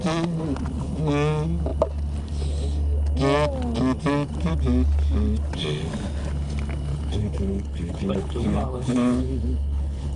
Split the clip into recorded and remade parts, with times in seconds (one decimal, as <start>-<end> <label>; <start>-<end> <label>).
0.0-6.9 recorded; 6.9-10.2 remade